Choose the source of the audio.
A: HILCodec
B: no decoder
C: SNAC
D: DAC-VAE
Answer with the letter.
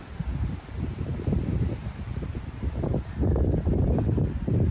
B